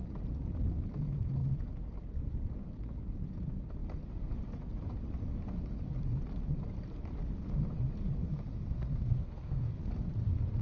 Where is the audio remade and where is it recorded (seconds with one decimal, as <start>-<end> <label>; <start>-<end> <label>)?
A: 0.0-8.2 recorded; 8.2-9.7 remade; 9.7-10.6 recorded